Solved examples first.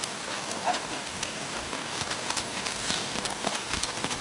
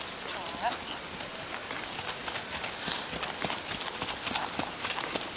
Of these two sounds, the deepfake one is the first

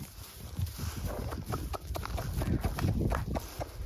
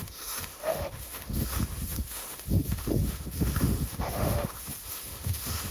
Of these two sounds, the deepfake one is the second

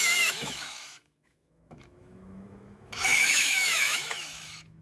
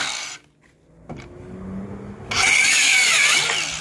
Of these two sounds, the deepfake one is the first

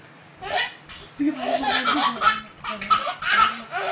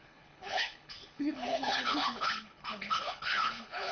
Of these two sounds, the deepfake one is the second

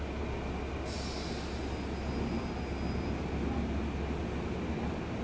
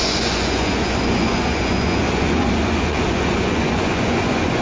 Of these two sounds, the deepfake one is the second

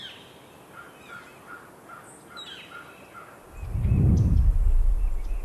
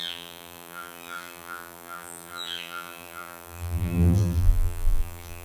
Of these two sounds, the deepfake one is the second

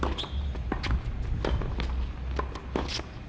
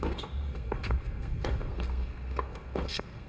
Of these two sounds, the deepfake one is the second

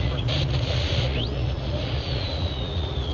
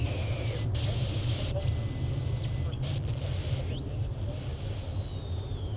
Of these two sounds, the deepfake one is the first